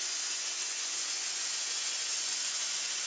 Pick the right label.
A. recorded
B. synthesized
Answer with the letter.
B